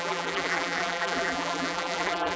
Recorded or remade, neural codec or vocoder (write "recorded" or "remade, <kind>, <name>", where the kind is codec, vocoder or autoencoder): remade, vocoder, BigVGAN v2